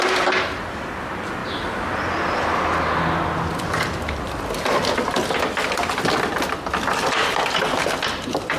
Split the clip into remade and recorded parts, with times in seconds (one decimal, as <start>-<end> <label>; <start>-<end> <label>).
0.0-8.6 recorded